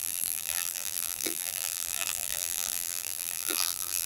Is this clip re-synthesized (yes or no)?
yes